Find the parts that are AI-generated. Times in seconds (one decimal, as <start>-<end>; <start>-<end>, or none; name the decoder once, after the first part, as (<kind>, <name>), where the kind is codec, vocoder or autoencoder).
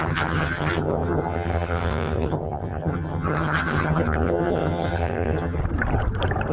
0.0-5.6 (vocoder, HiFi-GAN)